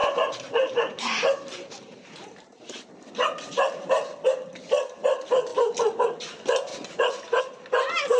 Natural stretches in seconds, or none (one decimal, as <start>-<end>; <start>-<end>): 2.9-6.7; 7.4-8.2